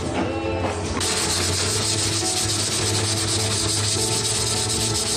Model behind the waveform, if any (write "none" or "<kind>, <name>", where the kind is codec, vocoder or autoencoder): none